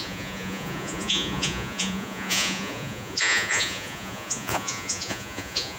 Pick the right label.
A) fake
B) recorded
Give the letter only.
A